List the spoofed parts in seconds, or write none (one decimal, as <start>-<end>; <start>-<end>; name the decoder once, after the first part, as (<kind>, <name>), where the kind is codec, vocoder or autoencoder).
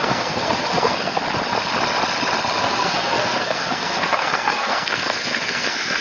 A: 0.0-1.2 (codec, SNAC); 2.6-6.0